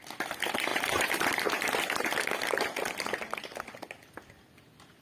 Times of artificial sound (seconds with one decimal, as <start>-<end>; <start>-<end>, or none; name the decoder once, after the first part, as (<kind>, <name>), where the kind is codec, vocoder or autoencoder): 0.7-3.7 (vocoder, BigVGAN v2)